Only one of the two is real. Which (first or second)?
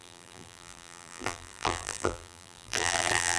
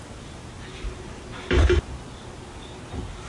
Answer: second